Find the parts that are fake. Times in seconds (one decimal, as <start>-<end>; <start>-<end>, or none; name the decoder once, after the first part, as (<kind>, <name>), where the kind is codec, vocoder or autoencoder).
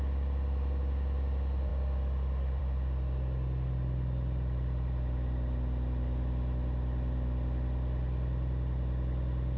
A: none